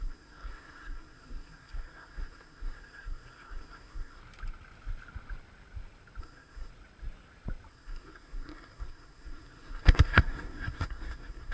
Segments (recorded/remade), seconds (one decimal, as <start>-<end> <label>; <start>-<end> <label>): 0.0-4.2 remade; 4.2-6.2 recorded; 6.2-6.7 remade; 6.7-7.7 recorded; 7.7-11.5 remade